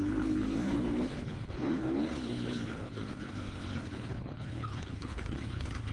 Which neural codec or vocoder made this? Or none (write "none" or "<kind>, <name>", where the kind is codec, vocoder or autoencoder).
codec, HILCodec